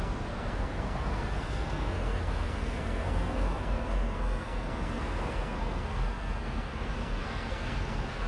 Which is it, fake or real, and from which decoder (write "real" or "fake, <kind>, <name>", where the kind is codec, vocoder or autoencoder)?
fake, codec, SNAC